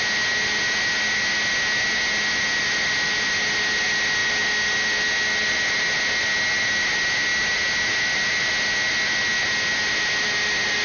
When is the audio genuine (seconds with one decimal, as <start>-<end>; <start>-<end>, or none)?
0.0-10.8